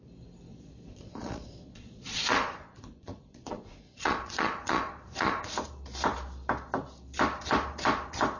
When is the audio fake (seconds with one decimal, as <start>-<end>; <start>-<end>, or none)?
0.5-5.5